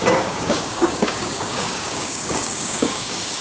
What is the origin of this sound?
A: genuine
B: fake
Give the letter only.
B